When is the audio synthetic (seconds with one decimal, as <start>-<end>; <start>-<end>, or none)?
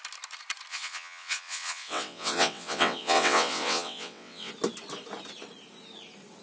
0.7-4.5